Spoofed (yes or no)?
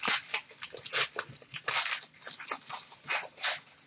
no